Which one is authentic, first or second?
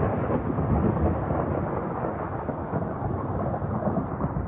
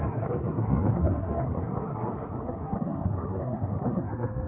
first